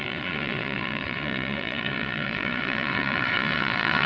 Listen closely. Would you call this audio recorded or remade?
remade